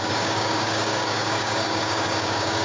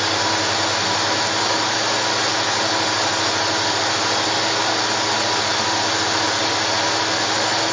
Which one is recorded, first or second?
second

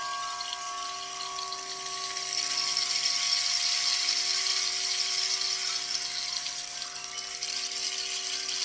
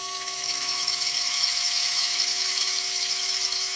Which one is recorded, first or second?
first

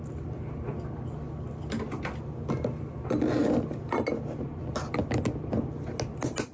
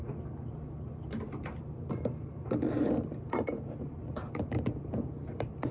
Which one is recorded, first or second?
first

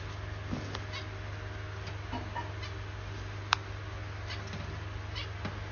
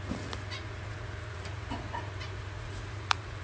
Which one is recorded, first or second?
first